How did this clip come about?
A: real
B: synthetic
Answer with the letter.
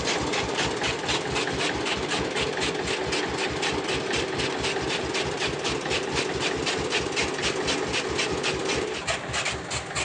A